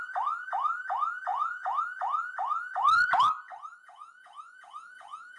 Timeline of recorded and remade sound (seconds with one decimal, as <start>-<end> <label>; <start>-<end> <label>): 0.0-1.3 recorded; 1.3-1.8 remade; 1.8-3.5 recorded; 3.5-5.4 remade